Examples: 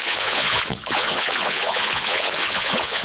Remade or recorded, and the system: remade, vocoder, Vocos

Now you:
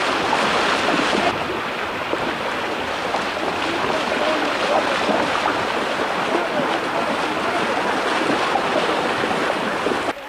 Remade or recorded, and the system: recorded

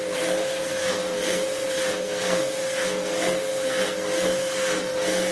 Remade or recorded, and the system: remade, codec, SNAC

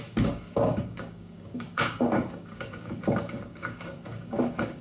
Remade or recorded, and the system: remade, codec, DAC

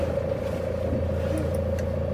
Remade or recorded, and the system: recorded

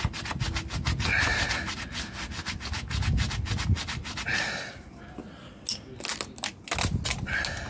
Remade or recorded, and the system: recorded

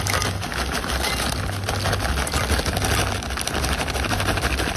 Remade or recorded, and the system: recorded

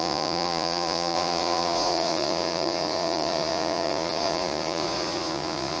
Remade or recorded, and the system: remade, vocoder, Vocos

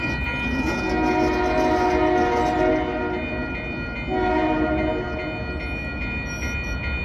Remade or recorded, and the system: recorded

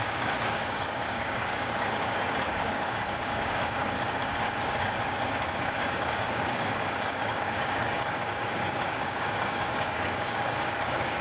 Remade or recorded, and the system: remade, codec, DAC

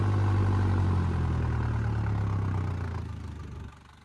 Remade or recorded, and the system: recorded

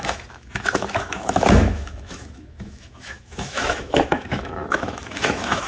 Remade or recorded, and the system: remade, autoencoder, DAC-VAE